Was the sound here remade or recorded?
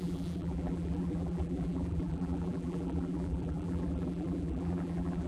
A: remade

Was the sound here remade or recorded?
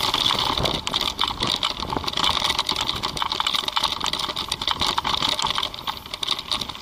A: recorded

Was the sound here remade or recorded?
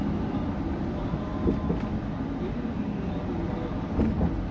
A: recorded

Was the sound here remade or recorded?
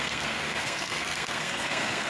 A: remade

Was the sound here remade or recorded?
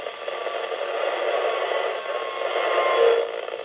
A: recorded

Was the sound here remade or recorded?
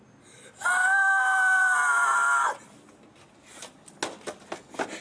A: recorded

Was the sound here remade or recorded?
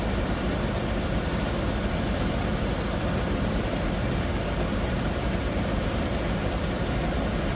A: recorded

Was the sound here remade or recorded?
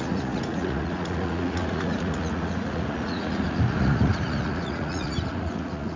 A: remade